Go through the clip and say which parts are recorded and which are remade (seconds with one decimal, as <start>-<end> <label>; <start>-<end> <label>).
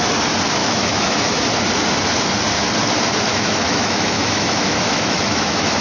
0.0-0.6 recorded; 0.6-1.4 remade; 1.4-3.3 recorded; 3.3-5.8 remade